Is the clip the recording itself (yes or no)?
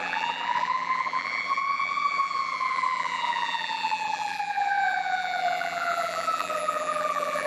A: no